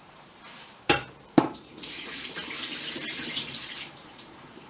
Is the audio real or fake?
fake